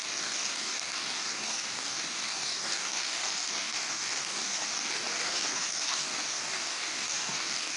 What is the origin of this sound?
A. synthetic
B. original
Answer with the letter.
A